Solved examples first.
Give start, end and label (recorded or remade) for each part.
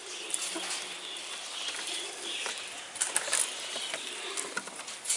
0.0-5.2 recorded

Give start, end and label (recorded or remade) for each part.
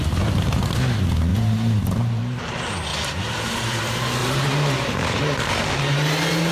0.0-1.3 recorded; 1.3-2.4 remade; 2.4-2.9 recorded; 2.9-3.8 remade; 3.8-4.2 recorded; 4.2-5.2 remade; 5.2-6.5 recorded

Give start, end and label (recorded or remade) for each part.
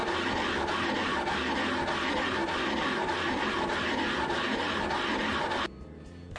0.0-6.4 recorded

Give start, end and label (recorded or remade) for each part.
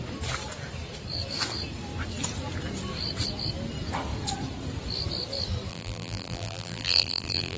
0.0-5.7 recorded; 5.7-7.6 remade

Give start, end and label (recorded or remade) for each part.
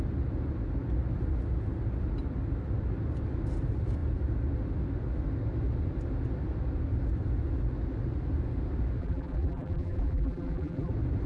0.0-9.0 recorded; 9.0-10.9 remade; 10.9-11.3 recorded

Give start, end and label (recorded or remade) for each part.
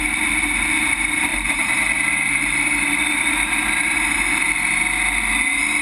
0.0-1.3 recorded; 1.3-4.8 remade; 4.8-5.8 recorded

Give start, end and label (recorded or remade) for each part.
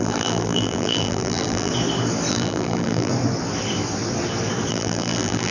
0.0-1.7 remade; 1.7-2.3 recorded; 2.3-3.1 remade; 3.1-4.7 recorded; 4.7-5.5 remade